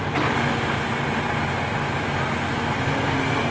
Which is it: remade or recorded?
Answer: recorded